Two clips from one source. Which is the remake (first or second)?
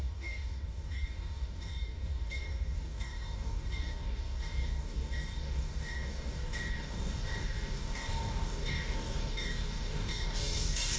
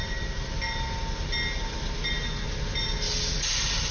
first